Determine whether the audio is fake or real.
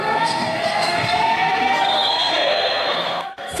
fake